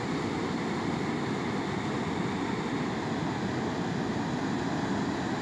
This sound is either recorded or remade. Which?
recorded